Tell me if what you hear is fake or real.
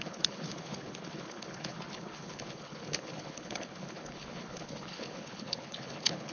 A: fake